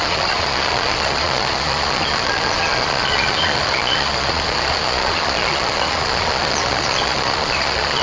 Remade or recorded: remade